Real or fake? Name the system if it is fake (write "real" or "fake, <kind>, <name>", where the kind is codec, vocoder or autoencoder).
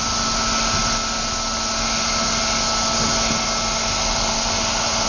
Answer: real